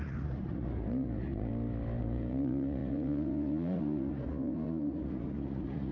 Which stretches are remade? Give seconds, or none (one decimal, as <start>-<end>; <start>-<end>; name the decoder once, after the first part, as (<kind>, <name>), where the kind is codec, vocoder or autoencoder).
0.0-1.5 (vocoder, Vocos); 2.0-5.9